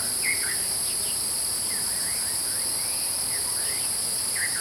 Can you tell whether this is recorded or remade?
recorded